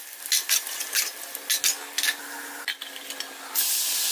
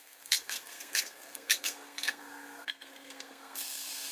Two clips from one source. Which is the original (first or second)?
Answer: first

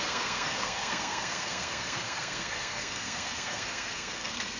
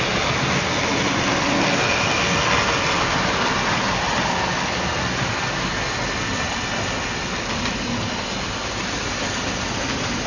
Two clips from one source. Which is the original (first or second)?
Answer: second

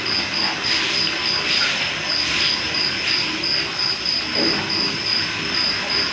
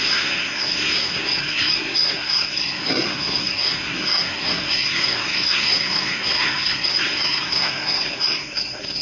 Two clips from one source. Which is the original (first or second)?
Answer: first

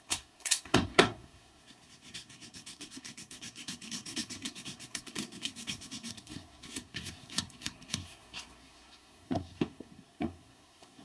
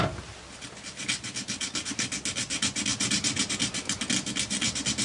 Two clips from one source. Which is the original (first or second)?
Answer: second